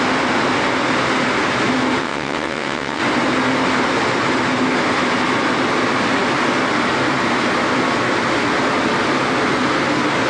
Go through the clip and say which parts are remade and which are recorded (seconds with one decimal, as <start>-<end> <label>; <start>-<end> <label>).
0.0-2.0 recorded; 2.0-3.0 remade; 3.0-10.3 recorded